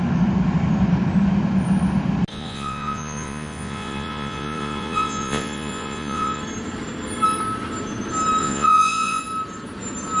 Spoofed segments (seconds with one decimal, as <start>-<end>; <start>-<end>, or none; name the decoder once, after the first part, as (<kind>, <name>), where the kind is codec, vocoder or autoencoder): 2.3-6.4 (vocoder, Vocos); 8.4-9.2